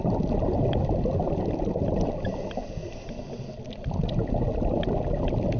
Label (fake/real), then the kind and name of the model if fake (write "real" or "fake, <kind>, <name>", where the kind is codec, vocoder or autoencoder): real